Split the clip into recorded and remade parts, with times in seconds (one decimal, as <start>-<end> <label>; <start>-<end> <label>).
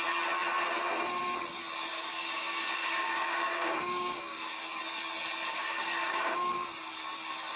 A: 0.0-1.9 recorded; 1.9-4.8 remade; 4.8-5.5 recorded; 5.5-6.5 remade; 6.5-7.6 recorded